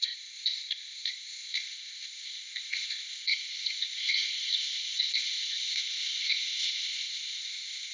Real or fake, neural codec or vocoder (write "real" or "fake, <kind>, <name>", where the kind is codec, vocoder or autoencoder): fake, codec, ZipCodec